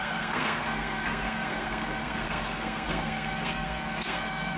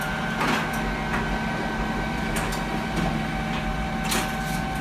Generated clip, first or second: first